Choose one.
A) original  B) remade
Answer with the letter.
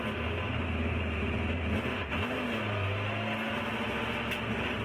A